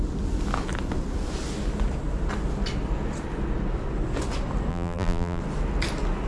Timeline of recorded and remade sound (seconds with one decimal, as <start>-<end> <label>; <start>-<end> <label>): 0.0-4.7 recorded; 4.7-5.4 remade; 5.4-6.3 recorded